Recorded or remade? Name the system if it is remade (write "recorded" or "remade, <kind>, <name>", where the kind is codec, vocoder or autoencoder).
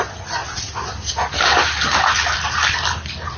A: recorded